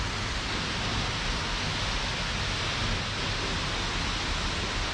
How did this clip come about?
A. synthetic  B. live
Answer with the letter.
B